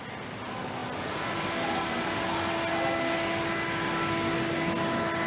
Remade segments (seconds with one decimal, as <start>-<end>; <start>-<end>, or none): none